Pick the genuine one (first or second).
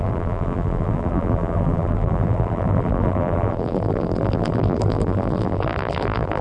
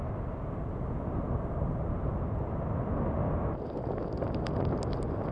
second